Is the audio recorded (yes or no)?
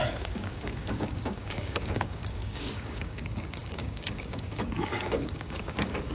no